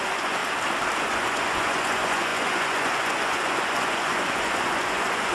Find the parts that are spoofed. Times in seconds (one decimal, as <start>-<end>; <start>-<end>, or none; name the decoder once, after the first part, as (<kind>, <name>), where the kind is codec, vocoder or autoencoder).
0.0-0.4 (vocoder, Vocos); 1.0-5.3